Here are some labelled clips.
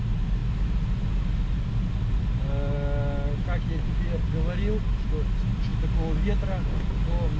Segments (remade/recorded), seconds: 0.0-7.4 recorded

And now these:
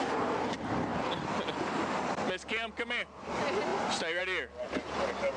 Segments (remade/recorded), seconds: 0.0-5.4 recorded

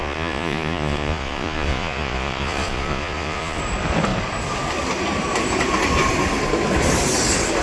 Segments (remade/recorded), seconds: 0.0-3.6 remade; 3.6-7.6 recorded

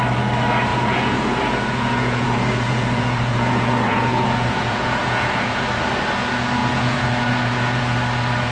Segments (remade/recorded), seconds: 0.0-0.7 recorded; 0.7-5.6 remade; 5.6-6.6 recorded; 6.6-7.8 remade; 7.8-8.5 recorded

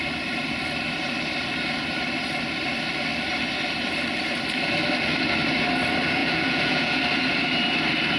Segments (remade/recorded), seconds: 0.0-6.2 recorded; 6.2-7.0 remade; 7.0-8.2 recorded

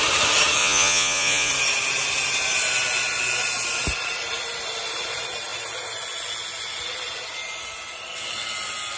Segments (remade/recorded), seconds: 0.0-0.6 recorded; 0.6-1.5 remade; 1.5-9.0 recorded